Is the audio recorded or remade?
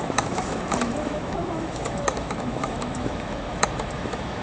remade